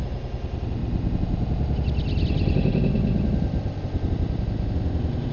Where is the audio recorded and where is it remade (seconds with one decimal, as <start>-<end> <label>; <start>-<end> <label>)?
0.0-0.8 recorded; 0.8-3.8 remade; 3.8-5.3 recorded